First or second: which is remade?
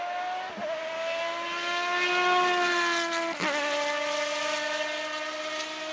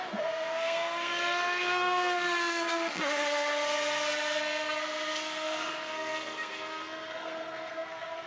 second